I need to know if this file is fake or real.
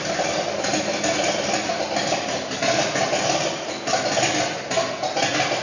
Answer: real